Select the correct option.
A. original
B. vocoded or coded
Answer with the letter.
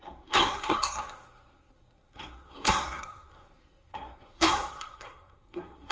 B